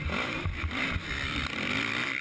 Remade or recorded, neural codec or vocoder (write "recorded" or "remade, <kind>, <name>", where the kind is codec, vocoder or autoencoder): remade, vocoder, BigVGAN v2